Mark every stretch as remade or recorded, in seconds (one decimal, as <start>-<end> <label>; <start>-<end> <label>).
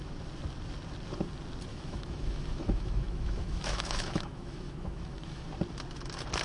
0.0-1.7 recorded; 1.7-5.5 remade; 5.5-6.4 recorded